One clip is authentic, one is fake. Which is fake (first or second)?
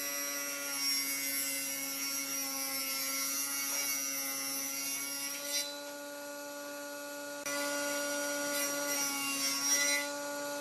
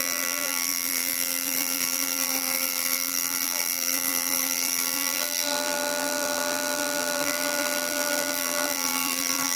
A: second